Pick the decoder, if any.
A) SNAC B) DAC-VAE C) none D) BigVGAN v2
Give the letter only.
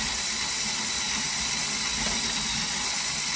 C